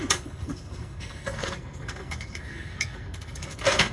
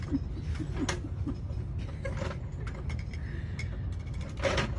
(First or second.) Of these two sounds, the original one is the second